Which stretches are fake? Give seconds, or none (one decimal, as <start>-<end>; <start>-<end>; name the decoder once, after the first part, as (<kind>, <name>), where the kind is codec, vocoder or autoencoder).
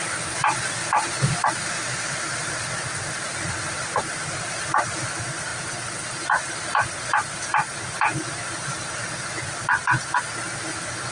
none